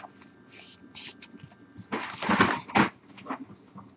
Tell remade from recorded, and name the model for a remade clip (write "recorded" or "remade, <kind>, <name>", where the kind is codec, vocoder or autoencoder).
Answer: recorded